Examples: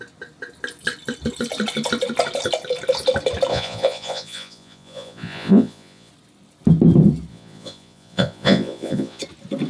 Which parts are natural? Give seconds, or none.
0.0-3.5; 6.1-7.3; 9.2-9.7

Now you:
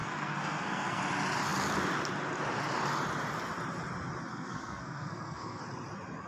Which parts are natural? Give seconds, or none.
1.0-4.3; 5.6-6.3